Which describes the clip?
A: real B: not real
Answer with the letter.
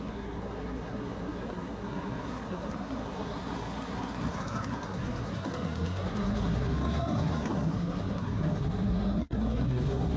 B